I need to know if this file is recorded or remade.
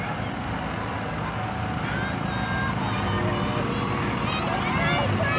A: recorded